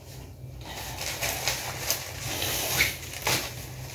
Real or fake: real